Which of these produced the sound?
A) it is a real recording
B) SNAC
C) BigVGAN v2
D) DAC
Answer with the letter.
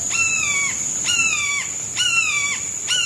C